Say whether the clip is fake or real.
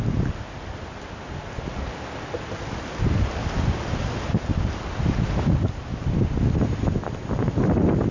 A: real